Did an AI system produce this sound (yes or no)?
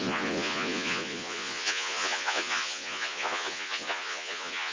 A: yes